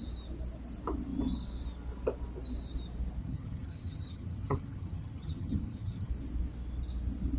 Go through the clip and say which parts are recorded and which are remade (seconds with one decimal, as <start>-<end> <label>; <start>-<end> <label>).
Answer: 0.0-3.2 recorded; 3.2-6.1 remade; 6.1-7.4 recorded